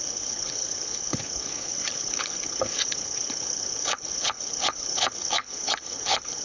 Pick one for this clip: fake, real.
fake